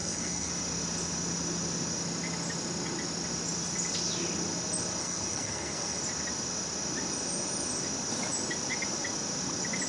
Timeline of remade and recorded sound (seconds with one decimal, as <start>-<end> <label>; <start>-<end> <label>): 0.0-0.5 remade; 0.5-5.0 recorded; 5.0-6.0 remade; 6.0-9.9 recorded